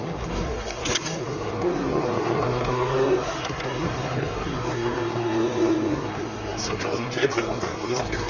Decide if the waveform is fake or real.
fake